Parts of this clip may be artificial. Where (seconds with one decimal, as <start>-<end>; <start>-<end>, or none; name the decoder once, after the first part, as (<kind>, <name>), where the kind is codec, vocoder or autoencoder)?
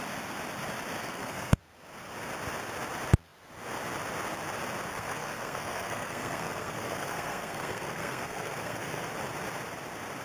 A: 1.0-1.6 (codec, SNAC); 4.9-9.1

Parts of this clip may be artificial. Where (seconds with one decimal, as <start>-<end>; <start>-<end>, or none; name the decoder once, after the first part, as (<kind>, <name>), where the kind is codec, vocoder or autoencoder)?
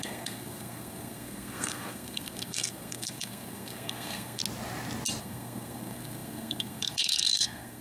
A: 0.0-4.4 (codec, SNAC); 5.2-7.8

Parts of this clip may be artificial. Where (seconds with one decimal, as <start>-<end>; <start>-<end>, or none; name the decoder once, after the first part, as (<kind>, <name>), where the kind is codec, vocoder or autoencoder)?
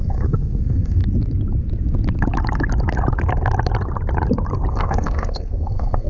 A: 0.0-1.0 (codec, SNAC); 4.7-6.1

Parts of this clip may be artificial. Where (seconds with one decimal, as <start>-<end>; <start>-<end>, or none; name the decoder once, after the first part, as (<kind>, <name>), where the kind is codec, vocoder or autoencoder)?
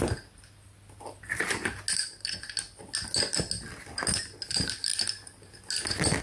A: none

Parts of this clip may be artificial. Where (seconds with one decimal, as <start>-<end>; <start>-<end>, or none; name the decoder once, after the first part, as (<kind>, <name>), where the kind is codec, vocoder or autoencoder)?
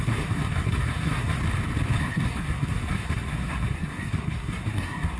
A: 0.0-1.4 (codec, SNAC); 2.0-5.2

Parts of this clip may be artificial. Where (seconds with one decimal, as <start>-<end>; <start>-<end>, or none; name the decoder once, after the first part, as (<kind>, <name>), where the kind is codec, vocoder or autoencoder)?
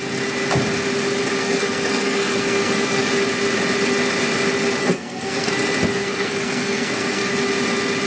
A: 1.4-3.1 (codec, SNAC); 4.8-5.5; 5.9-7.3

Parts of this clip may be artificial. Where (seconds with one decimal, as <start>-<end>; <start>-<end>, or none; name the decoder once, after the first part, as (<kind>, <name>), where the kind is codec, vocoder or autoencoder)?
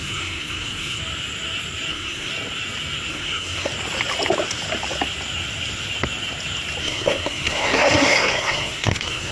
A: 0.0-1.0 (codec, SNAC); 1.9-2.3; 3.1-3.7; 6.8-9.3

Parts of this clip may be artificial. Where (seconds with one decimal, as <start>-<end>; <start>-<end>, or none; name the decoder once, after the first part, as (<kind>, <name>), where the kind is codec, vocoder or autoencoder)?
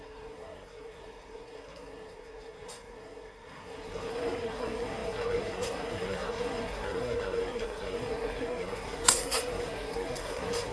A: 0.0-10.7 (codec, SNAC)